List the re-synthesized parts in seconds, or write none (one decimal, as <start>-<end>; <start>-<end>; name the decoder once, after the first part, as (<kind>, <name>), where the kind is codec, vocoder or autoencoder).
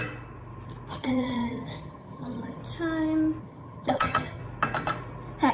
0.9-2.6 (vocoder, HiFi-GAN); 3.4-4.4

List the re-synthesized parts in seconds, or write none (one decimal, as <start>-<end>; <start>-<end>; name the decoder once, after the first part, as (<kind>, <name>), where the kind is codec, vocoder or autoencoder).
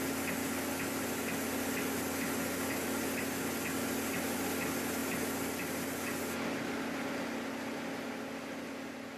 none